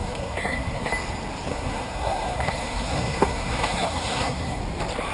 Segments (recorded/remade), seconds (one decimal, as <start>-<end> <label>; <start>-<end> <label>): 0.0-0.9 remade; 0.9-1.5 recorded; 1.5-4.6 remade; 4.6-5.1 recorded